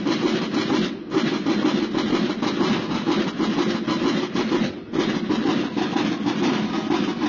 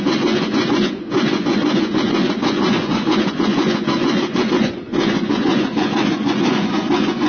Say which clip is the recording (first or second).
first